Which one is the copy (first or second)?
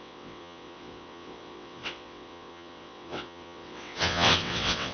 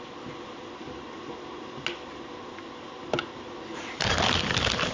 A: first